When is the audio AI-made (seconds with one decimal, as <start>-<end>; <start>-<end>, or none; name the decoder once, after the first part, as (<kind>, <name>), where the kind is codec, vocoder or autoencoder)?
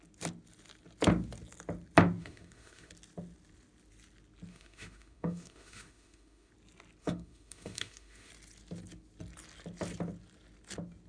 2.2-2.9 (autoencoder, DAC-VAE); 4.5-6.5; 7.0-8.3